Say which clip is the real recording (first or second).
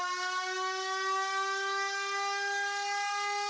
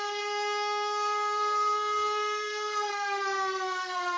first